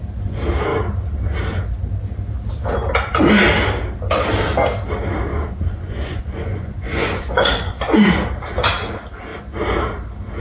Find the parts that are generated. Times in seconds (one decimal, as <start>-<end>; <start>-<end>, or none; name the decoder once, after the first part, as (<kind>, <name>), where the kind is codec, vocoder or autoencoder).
5.3-8.1 (vocoder, Vocos)